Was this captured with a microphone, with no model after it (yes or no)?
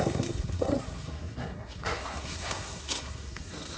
no